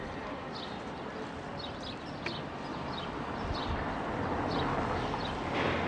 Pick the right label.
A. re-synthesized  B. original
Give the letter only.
B